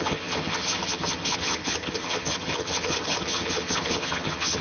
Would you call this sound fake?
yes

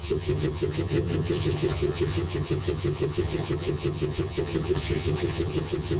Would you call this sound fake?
yes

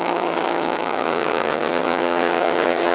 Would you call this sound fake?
yes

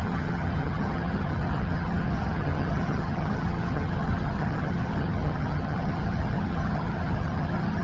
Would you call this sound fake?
yes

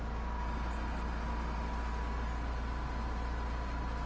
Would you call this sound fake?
no